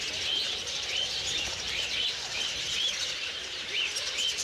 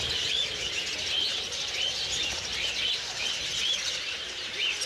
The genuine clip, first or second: second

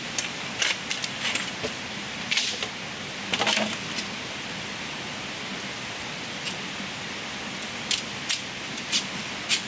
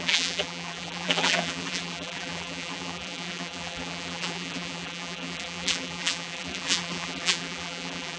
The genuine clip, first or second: first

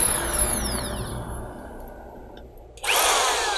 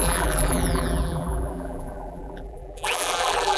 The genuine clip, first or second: first